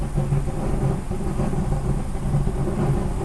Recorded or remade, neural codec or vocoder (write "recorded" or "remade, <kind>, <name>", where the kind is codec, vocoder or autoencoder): recorded